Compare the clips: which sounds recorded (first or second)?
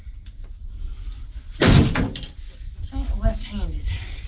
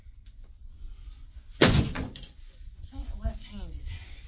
first